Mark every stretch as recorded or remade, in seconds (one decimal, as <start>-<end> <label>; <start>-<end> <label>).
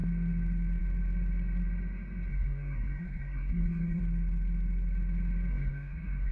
0.0-2.3 recorded; 2.3-4.0 remade; 4.0-5.5 recorded; 5.5-6.3 remade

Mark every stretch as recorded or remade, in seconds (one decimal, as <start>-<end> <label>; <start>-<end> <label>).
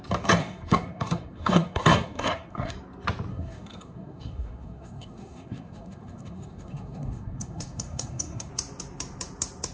0.0-0.4 recorded; 0.4-2.7 remade; 2.7-3.3 recorded; 3.3-8.5 remade; 8.5-9.7 recorded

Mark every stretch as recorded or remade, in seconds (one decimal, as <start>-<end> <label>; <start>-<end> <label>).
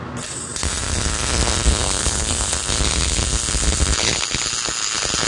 0.0-2.0 recorded; 2.0-2.5 remade; 2.5-5.3 recorded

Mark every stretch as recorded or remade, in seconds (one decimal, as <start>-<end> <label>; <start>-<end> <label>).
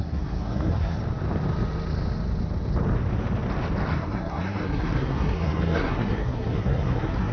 0.0-1.0 remade; 1.0-3.9 recorded; 3.9-7.3 remade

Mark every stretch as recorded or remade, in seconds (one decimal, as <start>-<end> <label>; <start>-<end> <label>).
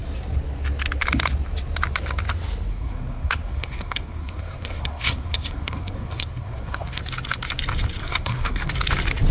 0.0-2.7 recorded; 2.7-7.0 remade; 7.0-8.0 recorded; 8.0-8.7 remade; 8.7-9.3 recorded